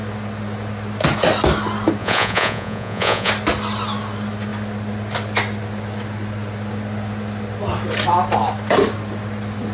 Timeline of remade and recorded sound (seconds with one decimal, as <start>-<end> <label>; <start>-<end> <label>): 0.0-2.0 recorded; 2.0-3.3 remade; 3.3-9.7 recorded